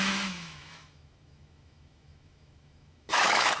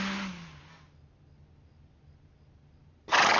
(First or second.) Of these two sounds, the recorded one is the second